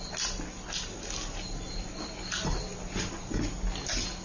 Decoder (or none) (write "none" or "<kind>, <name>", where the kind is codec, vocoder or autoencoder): none